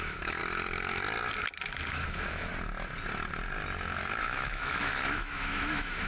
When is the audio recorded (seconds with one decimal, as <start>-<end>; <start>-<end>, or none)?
0.4-1.9; 2.5-4.2